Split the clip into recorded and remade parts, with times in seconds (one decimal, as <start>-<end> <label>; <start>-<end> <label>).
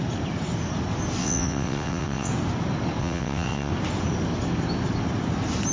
0.0-1.2 recorded; 1.2-2.3 remade; 2.3-3.0 recorded; 3.0-3.7 remade; 3.7-5.7 recorded